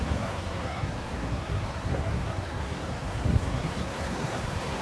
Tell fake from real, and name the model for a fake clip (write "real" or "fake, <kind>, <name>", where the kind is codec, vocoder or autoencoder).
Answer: fake, codec, SNAC